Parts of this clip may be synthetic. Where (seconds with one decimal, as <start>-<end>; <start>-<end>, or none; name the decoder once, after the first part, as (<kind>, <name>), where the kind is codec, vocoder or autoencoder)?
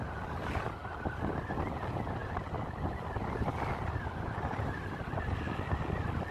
none